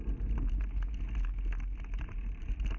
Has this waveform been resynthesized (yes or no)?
no